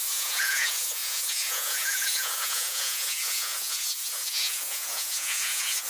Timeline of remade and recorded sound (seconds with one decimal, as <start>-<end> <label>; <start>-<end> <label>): 0.0-5.9 remade